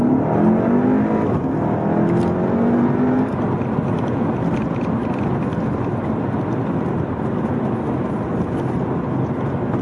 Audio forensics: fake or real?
real